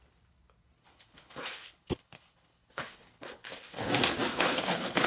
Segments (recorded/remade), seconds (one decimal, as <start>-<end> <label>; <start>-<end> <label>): 0.0-0.8 recorded; 0.8-3.9 remade; 3.9-4.3 recorded; 4.3-5.1 remade